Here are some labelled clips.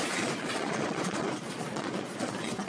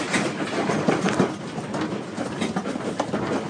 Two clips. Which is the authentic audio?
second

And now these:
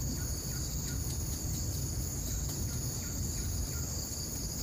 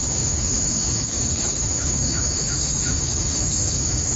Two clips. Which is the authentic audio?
first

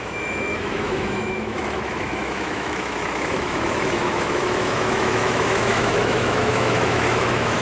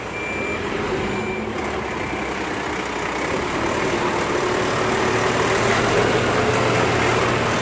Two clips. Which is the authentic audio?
second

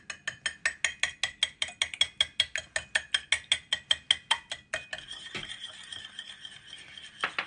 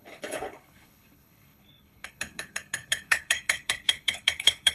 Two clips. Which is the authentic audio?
first